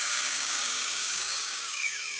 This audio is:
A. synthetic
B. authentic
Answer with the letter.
A